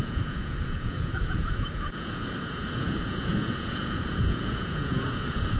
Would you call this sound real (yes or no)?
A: no